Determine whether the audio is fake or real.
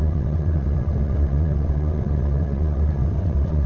fake